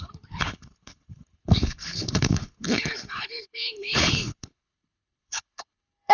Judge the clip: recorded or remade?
remade